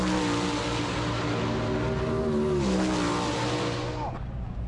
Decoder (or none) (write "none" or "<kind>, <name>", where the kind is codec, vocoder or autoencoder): none